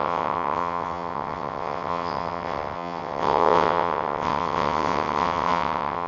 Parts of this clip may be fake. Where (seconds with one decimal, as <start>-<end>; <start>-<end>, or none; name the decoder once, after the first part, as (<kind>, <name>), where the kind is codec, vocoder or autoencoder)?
0.0-6.1 (vocoder, WaveNeXt)